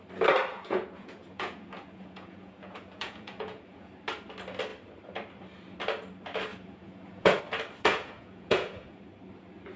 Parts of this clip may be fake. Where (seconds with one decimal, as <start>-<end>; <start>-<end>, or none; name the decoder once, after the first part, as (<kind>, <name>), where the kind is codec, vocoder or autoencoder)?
0.5-3.9 (vocoder, Vocos); 6.5-7.4; 7.9-9.0